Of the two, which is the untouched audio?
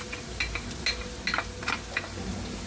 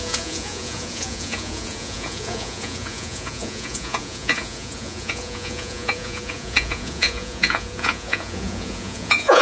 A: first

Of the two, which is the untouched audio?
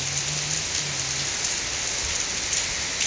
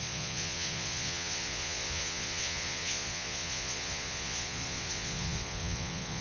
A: first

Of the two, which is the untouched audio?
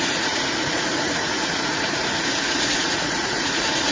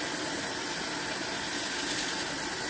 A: second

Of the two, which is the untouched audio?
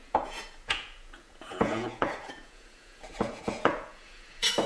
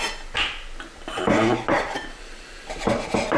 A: second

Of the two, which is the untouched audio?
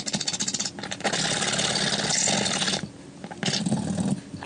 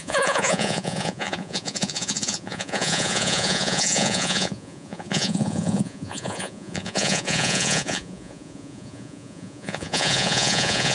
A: first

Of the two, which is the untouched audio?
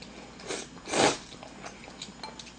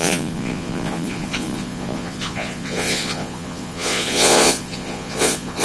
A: first